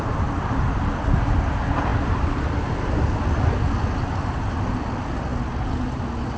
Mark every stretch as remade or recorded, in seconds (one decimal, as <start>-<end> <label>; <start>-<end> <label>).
0.0-6.4 recorded

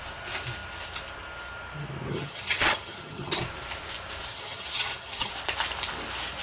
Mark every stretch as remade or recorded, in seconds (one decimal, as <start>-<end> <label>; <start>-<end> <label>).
0.0-2.1 recorded; 2.1-3.4 remade; 3.4-4.3 recorded; 4.3-5.3 remade; 5.3-6.4 recorded

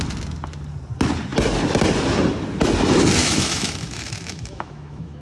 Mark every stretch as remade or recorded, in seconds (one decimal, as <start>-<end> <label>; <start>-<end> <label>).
0.0-3.2 recorded; 3.2-5.2 remade

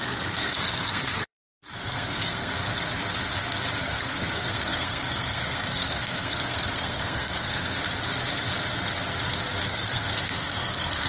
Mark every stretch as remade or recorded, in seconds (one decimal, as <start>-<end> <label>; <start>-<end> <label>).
0.0-2.5 remade; 2.5-3.8 recorded; 3.8-7.8 remade; 7.8-9.7 recorded; 9.7-11.1 remade

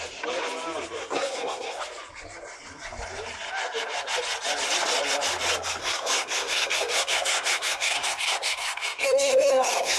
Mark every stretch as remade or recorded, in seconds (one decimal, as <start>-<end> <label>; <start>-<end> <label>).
0.0-1.0 recorded; 1.0-1.8 remade; 1.8-5.8 recorded; 5.8-10.0 remade